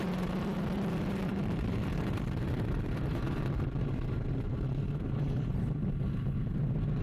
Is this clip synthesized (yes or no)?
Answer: yes